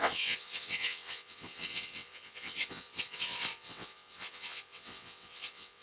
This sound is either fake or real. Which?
fake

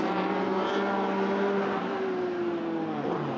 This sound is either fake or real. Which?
real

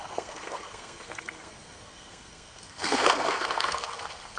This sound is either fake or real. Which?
fake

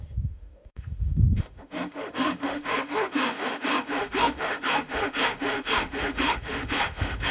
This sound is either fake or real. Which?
fake